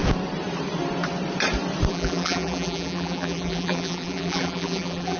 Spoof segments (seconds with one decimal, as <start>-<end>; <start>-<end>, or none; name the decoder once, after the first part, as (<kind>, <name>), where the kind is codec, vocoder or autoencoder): 1.9-5.2 (vocoder, BigVGAN v2)